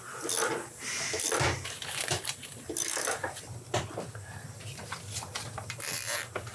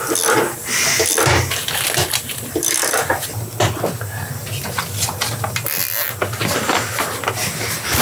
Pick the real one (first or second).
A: second